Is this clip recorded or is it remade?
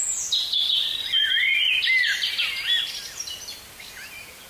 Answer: recorded